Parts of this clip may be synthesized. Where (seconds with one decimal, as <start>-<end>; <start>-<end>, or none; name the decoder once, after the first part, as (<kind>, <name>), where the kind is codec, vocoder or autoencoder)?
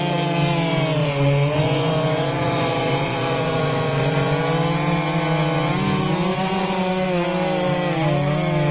1.0-4.4 (vocoder, Vocos); 6.3-6.9